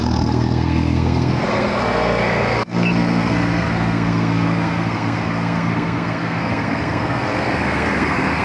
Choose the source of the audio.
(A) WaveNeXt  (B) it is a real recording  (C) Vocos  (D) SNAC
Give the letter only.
D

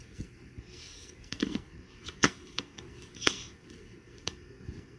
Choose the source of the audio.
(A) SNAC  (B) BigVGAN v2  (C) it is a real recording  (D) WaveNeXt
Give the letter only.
A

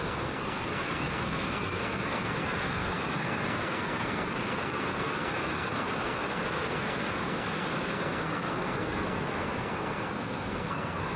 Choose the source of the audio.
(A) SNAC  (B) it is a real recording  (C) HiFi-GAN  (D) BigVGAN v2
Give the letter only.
A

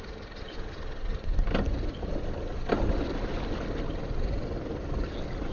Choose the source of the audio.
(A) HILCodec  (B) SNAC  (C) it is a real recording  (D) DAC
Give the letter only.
C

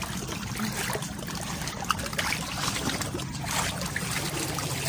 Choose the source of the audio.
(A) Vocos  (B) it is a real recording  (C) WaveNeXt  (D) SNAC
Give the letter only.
B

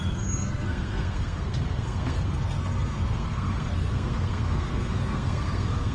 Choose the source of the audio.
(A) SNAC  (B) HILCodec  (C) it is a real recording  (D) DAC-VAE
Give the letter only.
A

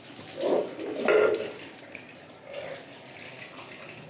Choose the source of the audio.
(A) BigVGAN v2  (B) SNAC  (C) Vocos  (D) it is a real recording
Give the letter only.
D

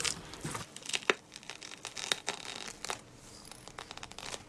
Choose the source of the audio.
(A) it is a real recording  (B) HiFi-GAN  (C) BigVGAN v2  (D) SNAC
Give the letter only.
A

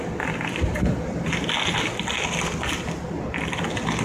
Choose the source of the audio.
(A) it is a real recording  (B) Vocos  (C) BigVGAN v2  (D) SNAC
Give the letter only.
A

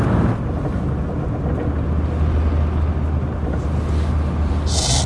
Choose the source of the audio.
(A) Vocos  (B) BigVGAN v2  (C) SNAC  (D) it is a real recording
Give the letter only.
D